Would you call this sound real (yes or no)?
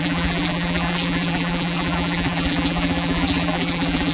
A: no